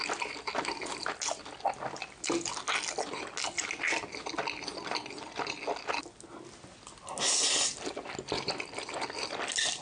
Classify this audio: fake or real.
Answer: real